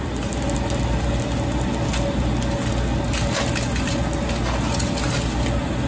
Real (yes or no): yes